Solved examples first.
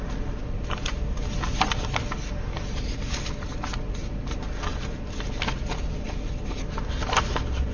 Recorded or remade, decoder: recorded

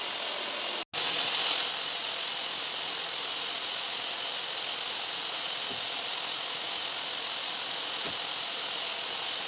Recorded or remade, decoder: recorded